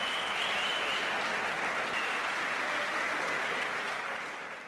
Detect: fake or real real